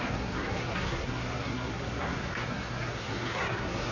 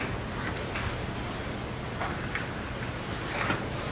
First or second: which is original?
second